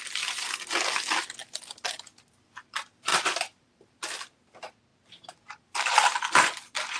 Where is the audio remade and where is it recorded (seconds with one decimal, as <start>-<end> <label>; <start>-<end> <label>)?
0.0-3.1 recorded; 3.1-4.0 remade; 4.0-4.9 recorded; 4.9-6.2 remade; 6.2-7.0 recorded